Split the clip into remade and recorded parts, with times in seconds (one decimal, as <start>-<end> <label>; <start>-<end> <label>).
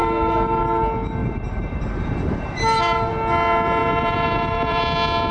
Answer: 0.0-0.6 remade; 0.6-1.2 recorded; 1.2-3.1 remade; 3.1-3.8 recorded; 3.8-4.8 remade; 4.8-5.3 recorded